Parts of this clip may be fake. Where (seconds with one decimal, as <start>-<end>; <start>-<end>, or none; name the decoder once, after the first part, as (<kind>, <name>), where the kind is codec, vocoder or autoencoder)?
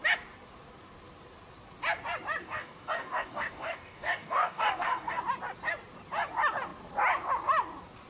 2.4-5.2 (codec, DAC)